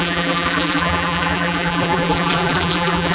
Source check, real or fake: fake